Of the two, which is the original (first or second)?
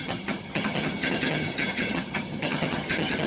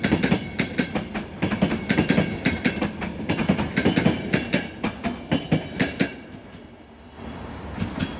second